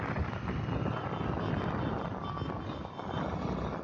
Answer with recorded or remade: recorded